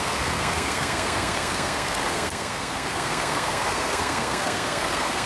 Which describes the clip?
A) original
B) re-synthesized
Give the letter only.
B